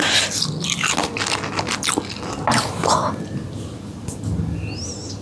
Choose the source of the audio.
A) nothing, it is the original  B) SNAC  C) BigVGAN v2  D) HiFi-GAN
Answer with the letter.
A